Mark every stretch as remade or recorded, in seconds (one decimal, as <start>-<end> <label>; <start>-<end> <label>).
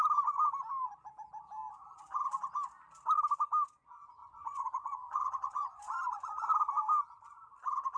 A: 0.0-4.2 recorded; 4.2-6.5 remade; 6.5-8.0 recorded